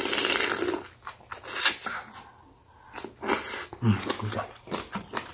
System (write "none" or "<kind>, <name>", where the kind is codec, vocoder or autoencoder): none